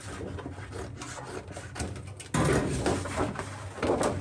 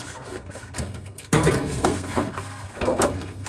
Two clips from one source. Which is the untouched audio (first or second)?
first